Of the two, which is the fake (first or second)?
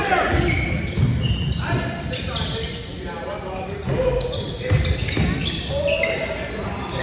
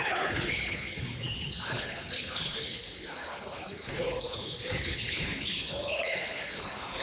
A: second